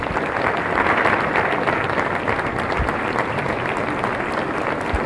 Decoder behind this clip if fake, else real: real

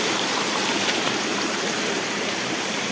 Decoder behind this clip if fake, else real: fake, vocoder, BigVGAN v2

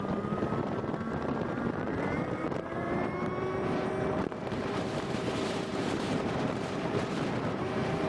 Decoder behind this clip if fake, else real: fake, vocoder, BigVGAN v2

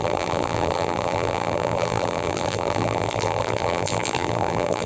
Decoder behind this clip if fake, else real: fake, vocoder, BigVGAN v2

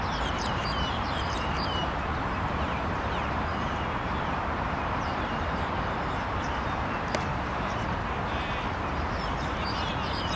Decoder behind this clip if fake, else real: fake, vocoder, BigVGAN v2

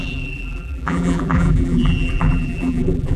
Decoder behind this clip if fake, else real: fake, vocoder, BigVGAN v2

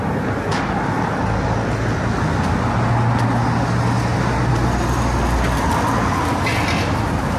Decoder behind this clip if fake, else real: real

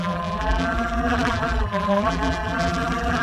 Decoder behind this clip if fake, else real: fake, vocoder, BigVGAN v2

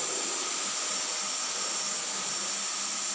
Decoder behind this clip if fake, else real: real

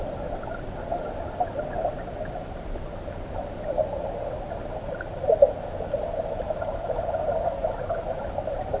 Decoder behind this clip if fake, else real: real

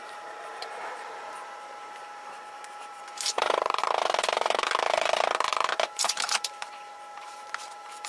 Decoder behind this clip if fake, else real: fake, vocoder, BigVGAN v2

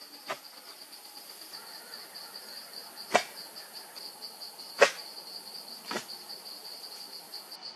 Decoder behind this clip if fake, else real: real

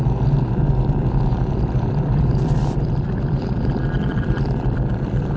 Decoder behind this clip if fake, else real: fake, vocoder, BigVGAN v2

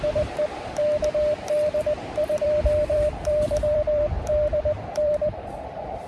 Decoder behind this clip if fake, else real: fake, vocoder, BigVGAN v2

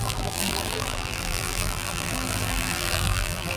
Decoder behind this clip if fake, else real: fake, vocoder, BigVGAN v2